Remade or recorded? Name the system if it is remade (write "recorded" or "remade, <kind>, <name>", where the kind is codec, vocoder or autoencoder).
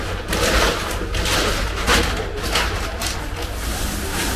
recorded